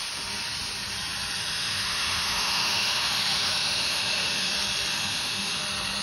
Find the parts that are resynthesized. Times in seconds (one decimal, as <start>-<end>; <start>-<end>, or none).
1.4-4.5; 4.9-5.6